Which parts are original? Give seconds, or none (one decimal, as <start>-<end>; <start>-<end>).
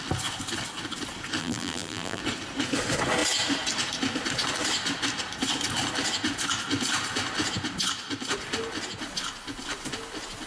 0.0-1.4; 2.2-10.5